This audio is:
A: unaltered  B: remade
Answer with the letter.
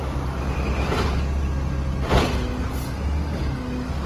A